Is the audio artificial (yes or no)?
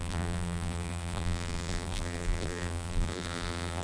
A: yes